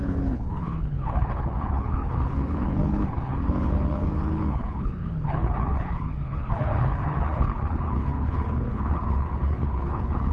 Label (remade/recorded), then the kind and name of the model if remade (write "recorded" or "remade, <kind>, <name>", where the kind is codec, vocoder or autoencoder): remade, codec, HILCodec